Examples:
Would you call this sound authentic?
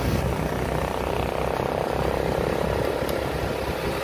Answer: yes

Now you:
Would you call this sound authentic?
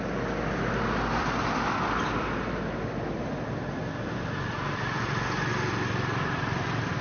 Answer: yes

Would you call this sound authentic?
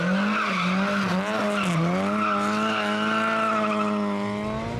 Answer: yes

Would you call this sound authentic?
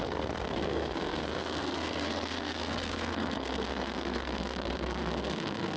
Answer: no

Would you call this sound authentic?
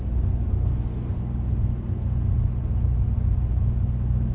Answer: yes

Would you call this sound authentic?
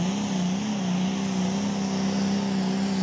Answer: yes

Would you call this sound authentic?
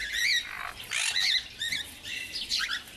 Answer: yes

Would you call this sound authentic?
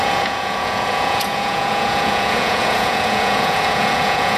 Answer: no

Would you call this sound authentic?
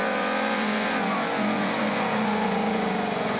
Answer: no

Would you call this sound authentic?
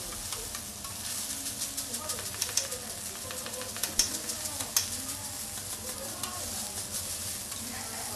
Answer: yes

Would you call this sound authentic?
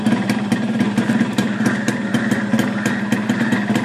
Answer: no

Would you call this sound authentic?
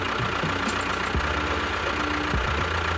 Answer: yes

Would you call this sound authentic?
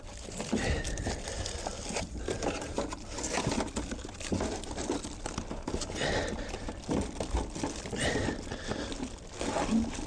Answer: yes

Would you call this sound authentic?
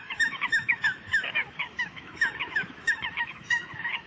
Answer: no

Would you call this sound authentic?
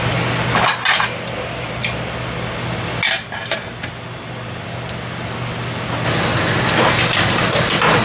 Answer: yes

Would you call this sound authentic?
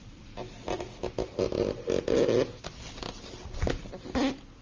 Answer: yes